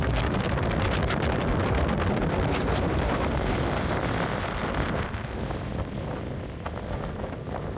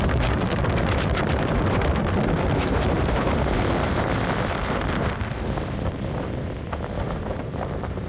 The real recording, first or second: first